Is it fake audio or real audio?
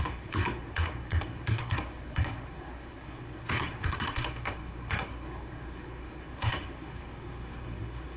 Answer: fake